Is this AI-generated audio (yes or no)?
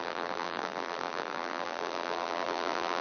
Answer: yes